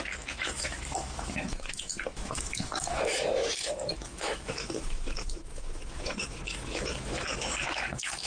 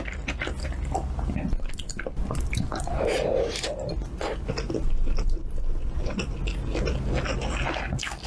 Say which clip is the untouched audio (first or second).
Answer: second